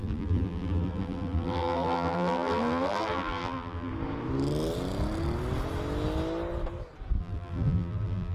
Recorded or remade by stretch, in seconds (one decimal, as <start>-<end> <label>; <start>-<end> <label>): 0.0-3.9 remade; 3.9-7.2 recorded; 7.2-8.3 remade